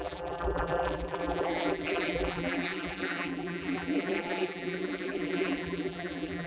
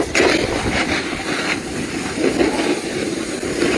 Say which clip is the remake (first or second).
first